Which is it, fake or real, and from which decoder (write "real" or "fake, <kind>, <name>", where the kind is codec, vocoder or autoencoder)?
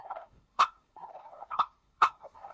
fake, codec, SNAC